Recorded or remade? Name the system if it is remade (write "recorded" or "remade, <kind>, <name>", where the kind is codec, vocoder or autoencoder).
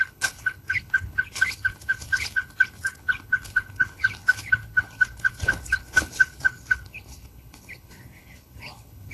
remade, codec, HILCodec